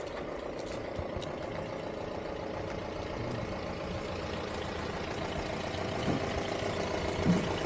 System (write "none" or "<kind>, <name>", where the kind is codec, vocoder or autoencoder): none